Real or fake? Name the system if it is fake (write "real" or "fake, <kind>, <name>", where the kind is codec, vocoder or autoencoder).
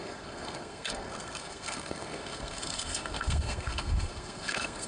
fake, codec, SNAC